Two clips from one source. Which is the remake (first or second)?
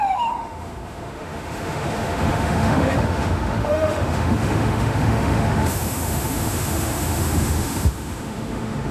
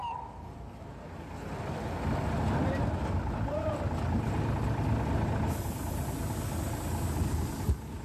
first